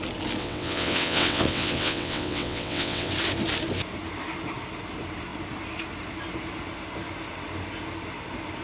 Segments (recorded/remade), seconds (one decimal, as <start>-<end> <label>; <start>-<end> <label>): 0.0-0.4 recorded; 0.4-3.1 remade; 3.1-8.6 recorded